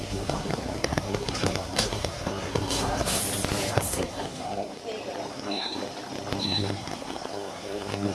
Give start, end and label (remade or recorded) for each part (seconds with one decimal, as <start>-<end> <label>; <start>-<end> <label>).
0.0-3.2 remade; 3.2-3.7 recorded; 3.7-4.8 remade; 4.8-5.3 recorded; 5.3-5.8 remade; 5.8-6.4 recorded; 6.4-8.1 remade